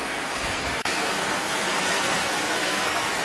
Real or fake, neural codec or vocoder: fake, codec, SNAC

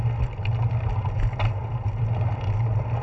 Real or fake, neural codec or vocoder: real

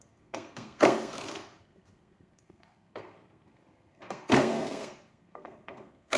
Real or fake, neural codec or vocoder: fake, codec, SNAC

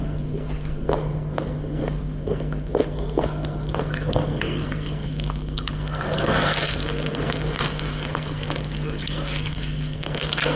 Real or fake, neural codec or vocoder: fake, codec, SNAC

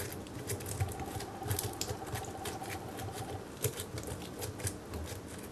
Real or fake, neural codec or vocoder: real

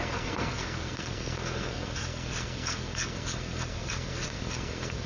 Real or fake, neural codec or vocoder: fake, codec, SNAC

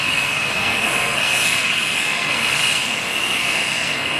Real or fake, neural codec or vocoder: fake, codec, SNAC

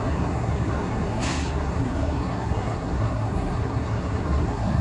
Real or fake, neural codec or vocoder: fake, codec, SNAC